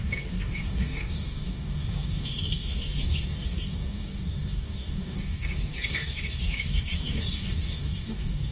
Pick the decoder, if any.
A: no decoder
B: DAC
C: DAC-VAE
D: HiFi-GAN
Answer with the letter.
B